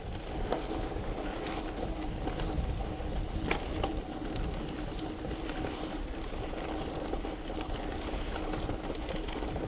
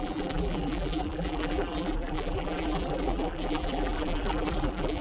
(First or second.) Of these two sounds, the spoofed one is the second